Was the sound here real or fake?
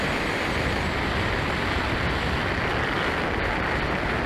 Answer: real